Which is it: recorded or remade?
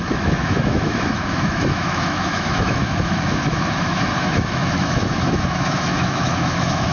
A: remade